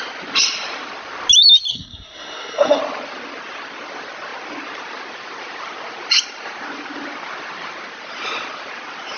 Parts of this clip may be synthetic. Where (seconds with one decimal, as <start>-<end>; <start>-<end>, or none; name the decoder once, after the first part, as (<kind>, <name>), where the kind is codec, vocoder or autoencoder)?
1.7-2.8 (codec, SNAC)